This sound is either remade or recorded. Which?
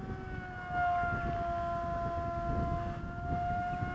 recorded